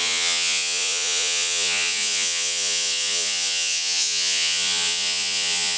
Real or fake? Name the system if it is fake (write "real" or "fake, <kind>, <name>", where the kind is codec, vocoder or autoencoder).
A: fake, vocoder, Vocos